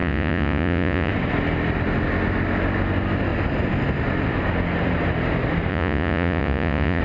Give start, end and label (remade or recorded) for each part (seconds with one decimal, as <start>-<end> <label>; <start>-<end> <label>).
0.0-1.1 remade; 1.1-5.7 recorded; 5.7-7.0 remade